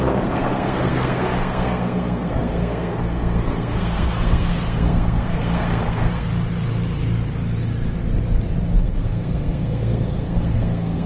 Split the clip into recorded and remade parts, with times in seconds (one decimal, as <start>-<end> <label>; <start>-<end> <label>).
0.0-6.3 remade; 6.3-8.8 recorded; 8.8-11.1 remade